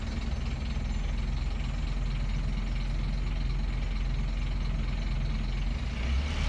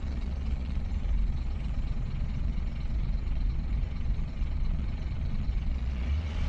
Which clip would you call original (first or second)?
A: first